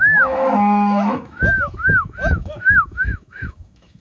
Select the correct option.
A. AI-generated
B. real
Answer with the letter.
A